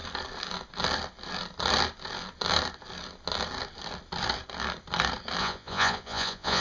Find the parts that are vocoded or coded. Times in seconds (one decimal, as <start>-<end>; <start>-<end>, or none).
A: 5.4-6.6